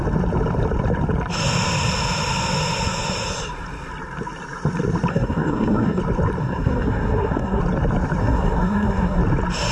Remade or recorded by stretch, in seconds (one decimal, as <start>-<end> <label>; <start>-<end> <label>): 0.0-5.1 recorded; 5.1-6.0 remade; 6.0-6.4 recorded; 6.4-7.6 remade; 7.6-8.2 recorded; 8.2-9.2 remade; 9.2-9.7 recorded